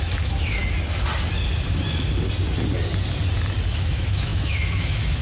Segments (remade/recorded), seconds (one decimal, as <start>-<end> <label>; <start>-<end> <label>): 0.0-0.6 remade; 0.6-3.7 recorded; 3.7-5.2 remade